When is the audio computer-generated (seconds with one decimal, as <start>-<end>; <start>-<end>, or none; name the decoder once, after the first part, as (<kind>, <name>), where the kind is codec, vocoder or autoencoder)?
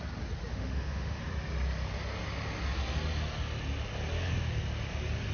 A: 0.5-1.2 (autoencoder, DAC-VAE)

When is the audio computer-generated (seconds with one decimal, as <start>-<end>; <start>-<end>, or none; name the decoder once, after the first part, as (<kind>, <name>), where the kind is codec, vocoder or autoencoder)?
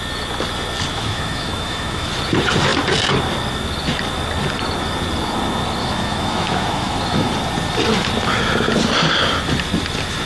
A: 0.9-2.1 (autoencoder, DAC-VAE); 5.8-7.3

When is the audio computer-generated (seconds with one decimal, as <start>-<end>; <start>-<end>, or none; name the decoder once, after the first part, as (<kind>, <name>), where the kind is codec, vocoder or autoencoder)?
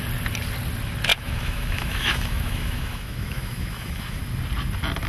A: 1.1-4.2 (autoencoder, DAC-VAE)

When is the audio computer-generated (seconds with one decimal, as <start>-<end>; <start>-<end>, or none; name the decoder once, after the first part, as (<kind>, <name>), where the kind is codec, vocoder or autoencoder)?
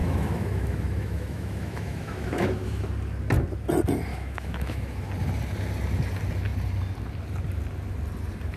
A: 0.0-2.9 (autoencoder, DAC-VAE); 4.1-5.1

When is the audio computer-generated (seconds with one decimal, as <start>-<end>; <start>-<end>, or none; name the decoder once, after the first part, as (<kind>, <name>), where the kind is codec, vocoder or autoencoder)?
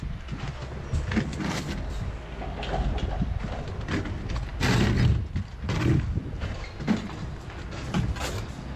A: none